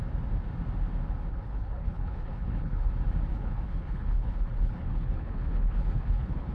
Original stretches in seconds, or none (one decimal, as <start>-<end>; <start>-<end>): 0.0-1.3; 2.9-3.3